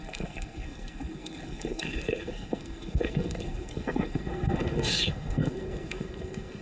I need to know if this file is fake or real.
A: fake